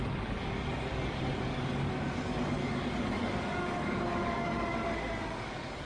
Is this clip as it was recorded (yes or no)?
no